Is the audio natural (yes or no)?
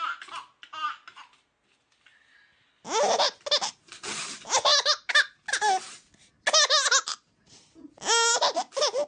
yes